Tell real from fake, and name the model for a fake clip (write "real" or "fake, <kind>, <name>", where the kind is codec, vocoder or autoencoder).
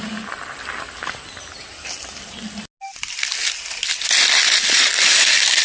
real